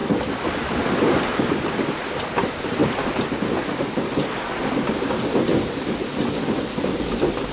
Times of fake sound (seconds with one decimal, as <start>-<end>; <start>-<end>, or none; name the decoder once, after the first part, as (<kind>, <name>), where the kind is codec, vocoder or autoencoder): none